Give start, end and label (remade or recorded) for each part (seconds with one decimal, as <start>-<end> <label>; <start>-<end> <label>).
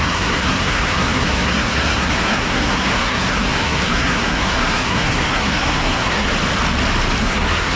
0.0-6.3 remade; 6.3-7.2 recorded; 7.2-7.8 remade